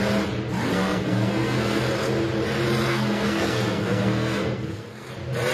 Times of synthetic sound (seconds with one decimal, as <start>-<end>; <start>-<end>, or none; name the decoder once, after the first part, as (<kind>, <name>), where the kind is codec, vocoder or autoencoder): 0.7-1.8 (codec, SNAC); 2.9-5.1